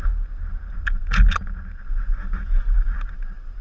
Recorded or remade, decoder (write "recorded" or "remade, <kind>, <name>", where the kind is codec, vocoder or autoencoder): recorded